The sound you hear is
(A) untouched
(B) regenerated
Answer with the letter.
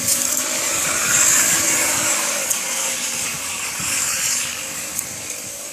B